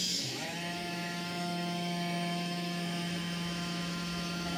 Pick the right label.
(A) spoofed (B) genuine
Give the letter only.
A